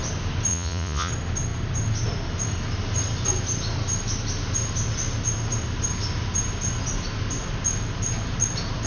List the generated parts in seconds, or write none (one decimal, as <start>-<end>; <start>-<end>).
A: 0.5-1.1